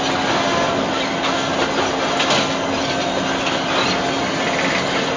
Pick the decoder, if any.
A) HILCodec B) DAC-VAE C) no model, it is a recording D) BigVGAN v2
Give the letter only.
C